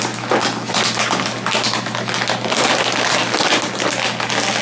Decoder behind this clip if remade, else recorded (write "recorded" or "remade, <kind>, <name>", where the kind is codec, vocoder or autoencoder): recorded